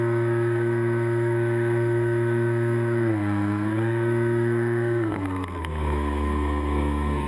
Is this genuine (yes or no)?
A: no